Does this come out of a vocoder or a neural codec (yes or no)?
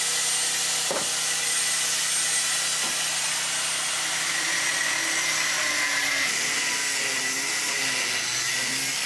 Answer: no